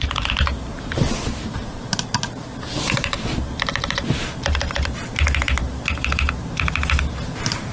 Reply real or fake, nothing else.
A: fake